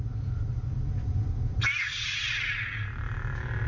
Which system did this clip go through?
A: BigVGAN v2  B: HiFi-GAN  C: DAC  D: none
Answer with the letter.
D